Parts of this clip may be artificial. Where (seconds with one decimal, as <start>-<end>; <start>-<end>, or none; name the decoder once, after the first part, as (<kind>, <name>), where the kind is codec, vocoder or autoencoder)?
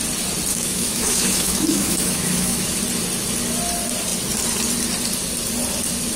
0.5-2.8 (autoencoder, DAC-VAE)